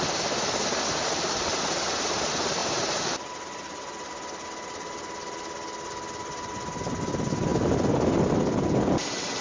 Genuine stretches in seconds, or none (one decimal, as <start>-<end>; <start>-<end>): 0.0-9.4